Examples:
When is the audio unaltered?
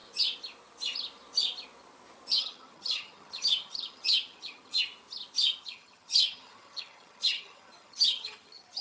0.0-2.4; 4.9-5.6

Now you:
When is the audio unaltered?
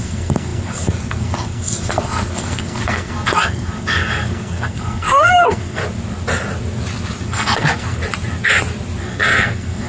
5.8-7.2; 8.0-9.0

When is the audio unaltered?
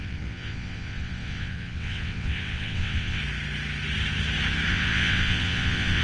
3.2-4.7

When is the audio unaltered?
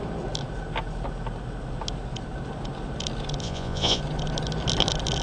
0.0-3.4; 4.0-5.2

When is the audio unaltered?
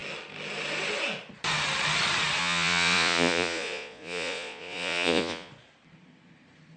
0.0-2.4; 5.5-6.8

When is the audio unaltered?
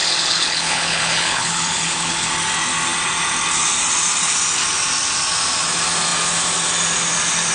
2.3-7.5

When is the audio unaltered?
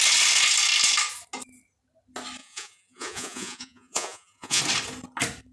0.0-2.4; 4.6-5.5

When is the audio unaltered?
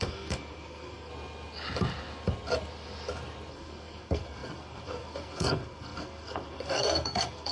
1.1-3.5